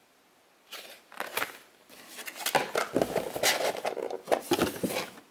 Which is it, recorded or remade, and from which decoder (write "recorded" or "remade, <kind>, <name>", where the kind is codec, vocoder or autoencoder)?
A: recorded